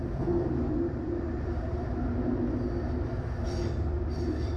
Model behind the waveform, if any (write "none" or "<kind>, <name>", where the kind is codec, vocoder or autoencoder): none